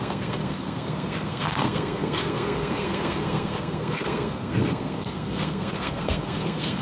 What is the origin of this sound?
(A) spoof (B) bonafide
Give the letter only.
A